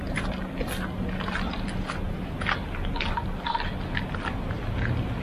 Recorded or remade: recorded